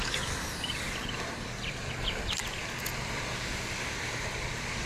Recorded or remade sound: recorded